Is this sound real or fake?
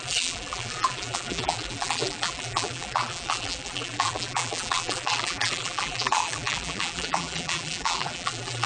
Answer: fake